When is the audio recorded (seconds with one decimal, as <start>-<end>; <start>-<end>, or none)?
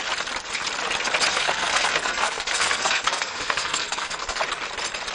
0.0-1.3; 4.4-5.1